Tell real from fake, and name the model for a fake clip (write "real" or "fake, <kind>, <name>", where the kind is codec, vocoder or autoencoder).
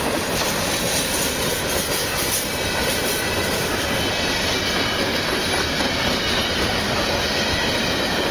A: real